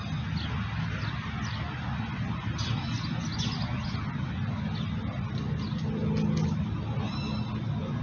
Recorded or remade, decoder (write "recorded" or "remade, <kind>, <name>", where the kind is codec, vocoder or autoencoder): recorded